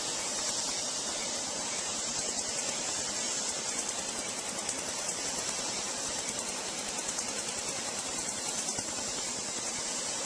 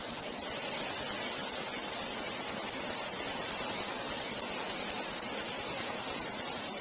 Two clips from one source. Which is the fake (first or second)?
first